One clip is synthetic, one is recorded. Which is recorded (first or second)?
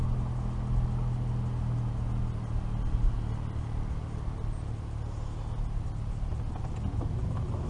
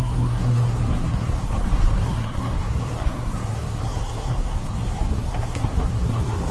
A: first